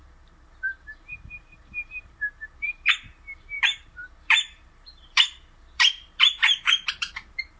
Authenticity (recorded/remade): remade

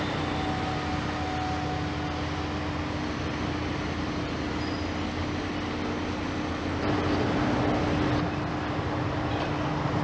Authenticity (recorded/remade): recorded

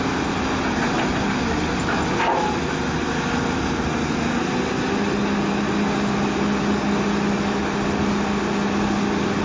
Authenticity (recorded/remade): recorded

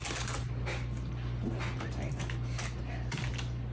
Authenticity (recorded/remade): recorded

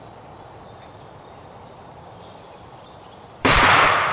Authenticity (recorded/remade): remade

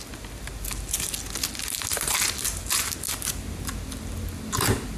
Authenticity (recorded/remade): recorded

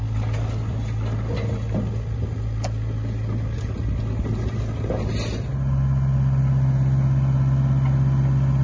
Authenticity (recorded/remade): recorded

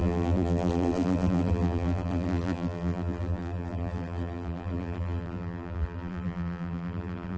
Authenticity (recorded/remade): remade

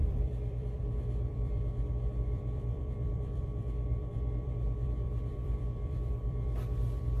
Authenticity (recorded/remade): remade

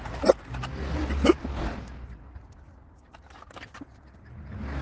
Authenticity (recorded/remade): recorded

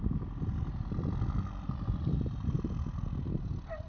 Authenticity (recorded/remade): remade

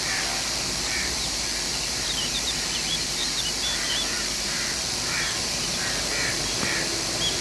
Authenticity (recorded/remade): remade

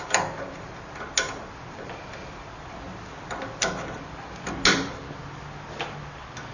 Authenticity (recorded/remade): recorded